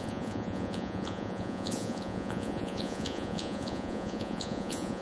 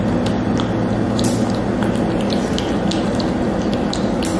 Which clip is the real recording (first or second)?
second